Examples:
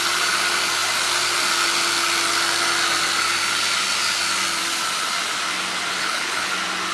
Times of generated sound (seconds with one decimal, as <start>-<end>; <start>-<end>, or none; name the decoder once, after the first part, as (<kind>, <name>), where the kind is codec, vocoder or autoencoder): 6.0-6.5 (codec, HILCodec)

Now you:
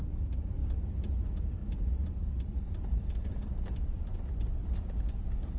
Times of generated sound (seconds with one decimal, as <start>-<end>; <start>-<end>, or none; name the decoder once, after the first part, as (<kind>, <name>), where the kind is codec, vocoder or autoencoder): none

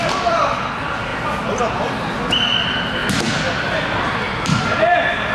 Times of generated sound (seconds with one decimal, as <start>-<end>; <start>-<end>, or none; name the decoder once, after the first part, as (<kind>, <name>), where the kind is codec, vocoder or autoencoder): 0.0-1.1 (vocoder, BigVGAN v2); 1.6-3.0; 4.1-5.3

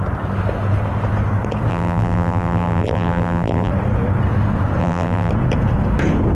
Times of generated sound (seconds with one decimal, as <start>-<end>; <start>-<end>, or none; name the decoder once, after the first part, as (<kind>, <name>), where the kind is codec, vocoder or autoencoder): 1.7-3.7 (vocoder, BigVGAN v2); 4.8-5.3

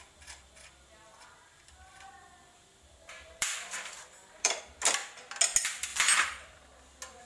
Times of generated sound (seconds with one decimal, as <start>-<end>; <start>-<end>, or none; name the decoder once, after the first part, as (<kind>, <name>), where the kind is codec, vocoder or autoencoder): 1.5-4.6 (vocoder, BigVGAN v2); 5.9-6.6